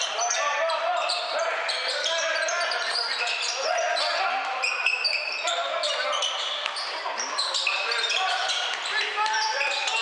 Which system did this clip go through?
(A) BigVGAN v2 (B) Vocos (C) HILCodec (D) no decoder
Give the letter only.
A